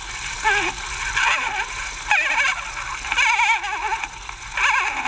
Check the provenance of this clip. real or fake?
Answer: real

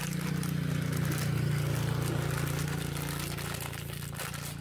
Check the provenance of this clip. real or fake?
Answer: real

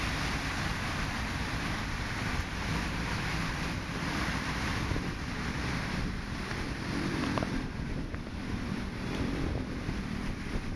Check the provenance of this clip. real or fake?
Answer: fake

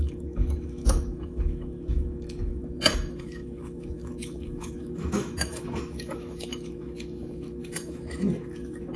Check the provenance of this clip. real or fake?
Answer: fake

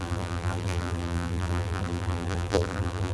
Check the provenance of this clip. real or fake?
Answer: fake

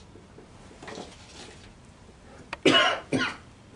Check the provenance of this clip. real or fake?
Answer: real